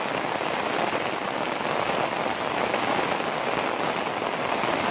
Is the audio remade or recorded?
recorded